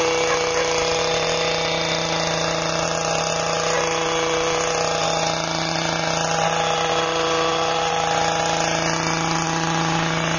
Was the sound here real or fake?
real